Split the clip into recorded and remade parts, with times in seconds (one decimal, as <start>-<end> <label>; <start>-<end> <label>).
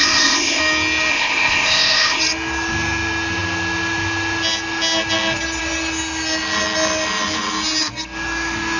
0.0-0.6 remade; 0.6-1.1 recorded; 1.1-2.2 remade; 2.2-8.8 recorded